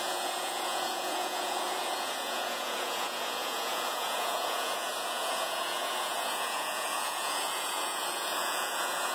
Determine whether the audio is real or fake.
fake